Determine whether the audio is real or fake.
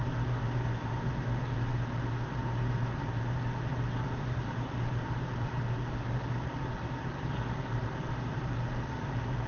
fake